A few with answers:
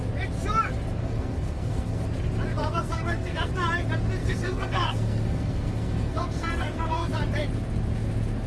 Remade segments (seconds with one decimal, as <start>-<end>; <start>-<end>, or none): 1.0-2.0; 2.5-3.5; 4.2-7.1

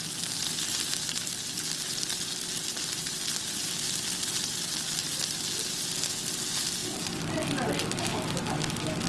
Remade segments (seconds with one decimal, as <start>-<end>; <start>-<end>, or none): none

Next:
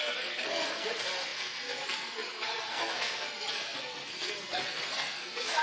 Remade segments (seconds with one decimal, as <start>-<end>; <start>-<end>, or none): 0.0-5.6

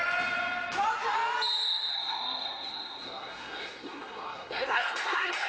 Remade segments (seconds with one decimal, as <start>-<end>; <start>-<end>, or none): 1.9-5.5